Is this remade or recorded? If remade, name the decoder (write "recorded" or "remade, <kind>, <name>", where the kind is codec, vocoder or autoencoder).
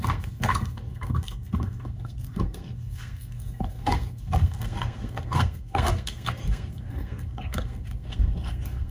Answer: remade, codec, SNAC